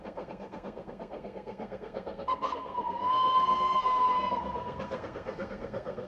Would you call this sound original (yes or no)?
no